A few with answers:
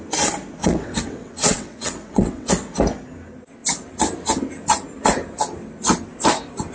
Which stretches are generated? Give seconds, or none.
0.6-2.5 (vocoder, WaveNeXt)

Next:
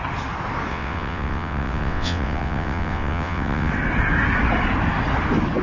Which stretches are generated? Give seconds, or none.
0.7-3.7 (vocoder, WaveNeXt)